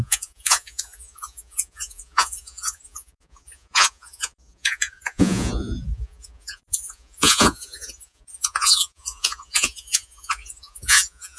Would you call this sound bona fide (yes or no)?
no